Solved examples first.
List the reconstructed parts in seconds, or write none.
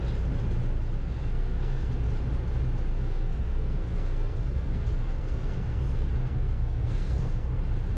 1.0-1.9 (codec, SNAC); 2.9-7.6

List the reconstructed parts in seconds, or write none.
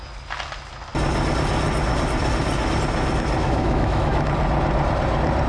3.4-4.3 (autoencoder, DAC-VAE)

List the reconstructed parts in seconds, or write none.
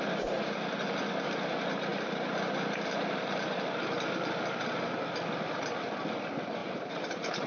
6.6-7.5 (vocoder, BigVGAN v2)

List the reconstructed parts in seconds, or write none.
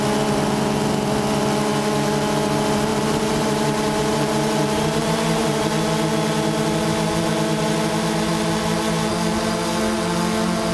2.9-5.7 (vocoder, BigVGAN v2)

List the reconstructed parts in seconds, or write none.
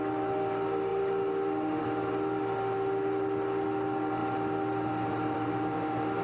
none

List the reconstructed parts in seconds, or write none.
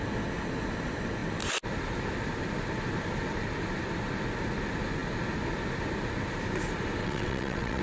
7.0-7.8 (vocoder, WaveNeXt)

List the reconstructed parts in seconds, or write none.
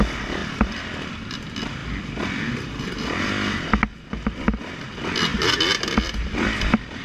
0.4-1.2 (vocoder, BigVGAN v2)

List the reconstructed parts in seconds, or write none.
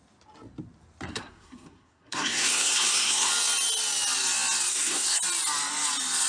1.1-3.3 (codec, SNAC); 4.7-5.2